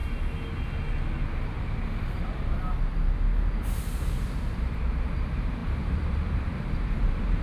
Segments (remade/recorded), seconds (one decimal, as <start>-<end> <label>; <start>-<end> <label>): 0.0-3.5 recorded; 3.5-7.4 remade